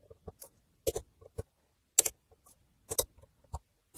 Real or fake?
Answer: real